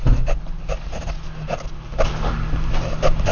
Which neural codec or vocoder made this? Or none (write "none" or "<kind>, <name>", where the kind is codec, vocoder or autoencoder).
none